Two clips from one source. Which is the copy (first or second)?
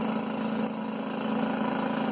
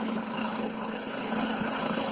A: second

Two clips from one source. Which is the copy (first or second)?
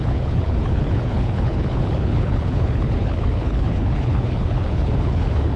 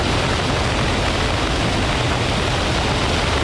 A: first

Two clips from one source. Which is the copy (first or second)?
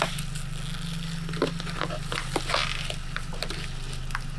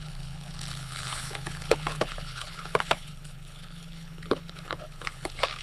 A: second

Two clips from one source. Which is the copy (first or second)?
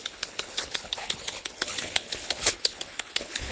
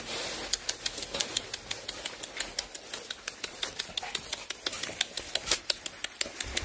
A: first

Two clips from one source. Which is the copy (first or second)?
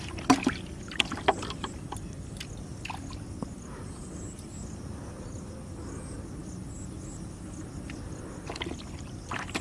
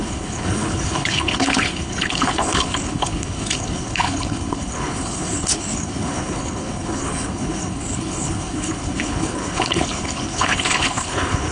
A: second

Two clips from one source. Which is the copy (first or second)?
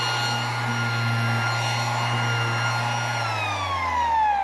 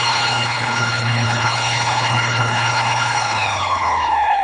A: second